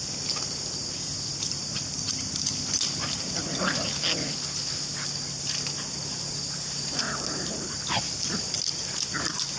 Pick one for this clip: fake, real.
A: real